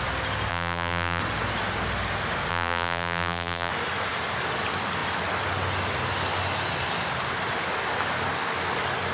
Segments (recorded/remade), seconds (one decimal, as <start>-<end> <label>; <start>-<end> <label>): 0.0-0.5 recorded; 0.5-1.2 remade; 1.2-2.5 recorded; 2.5-3.7 remade; 3.7-9.1 recorded